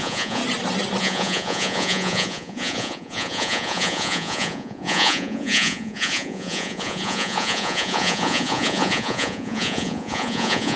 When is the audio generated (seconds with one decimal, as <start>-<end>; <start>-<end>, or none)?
0.0-0.4; 1.0-10.8

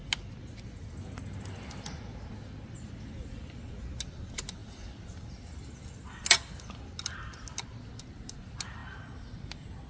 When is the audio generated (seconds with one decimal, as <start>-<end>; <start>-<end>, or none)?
none

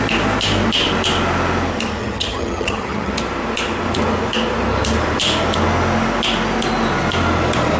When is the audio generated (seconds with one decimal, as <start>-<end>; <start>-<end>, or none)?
2.0-3.1

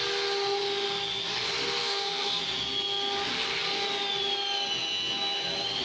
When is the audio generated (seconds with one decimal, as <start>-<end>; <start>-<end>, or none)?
1.8-2.4

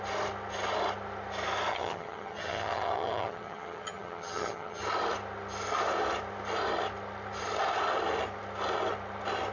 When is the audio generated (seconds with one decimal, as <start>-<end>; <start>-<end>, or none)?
1.7-4.8